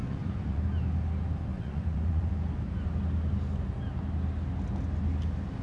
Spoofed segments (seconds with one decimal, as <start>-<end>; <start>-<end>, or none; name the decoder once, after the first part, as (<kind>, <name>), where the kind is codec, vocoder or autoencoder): 0.0-0.6 (vocoder, Vocos); 1.5-2.3